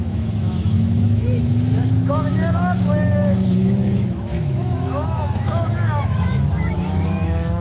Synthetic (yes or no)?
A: yes